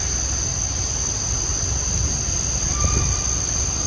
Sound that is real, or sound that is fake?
real